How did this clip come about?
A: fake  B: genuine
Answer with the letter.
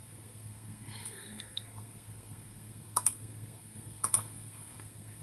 A